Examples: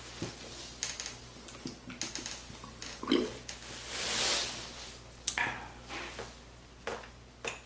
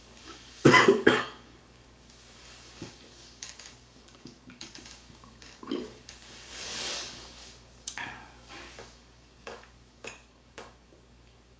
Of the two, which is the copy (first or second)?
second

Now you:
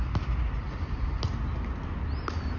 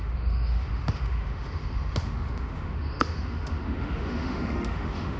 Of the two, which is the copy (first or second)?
second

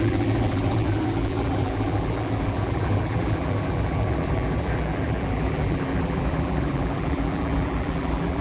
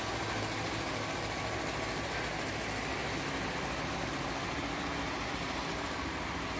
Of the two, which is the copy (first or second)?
first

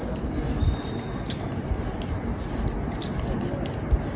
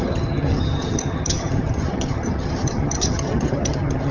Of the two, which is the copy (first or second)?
second